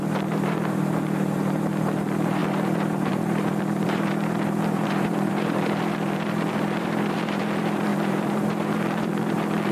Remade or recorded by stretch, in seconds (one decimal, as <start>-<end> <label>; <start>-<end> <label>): 0.0-9.7 remade